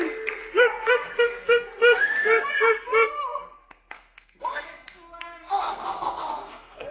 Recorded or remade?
remade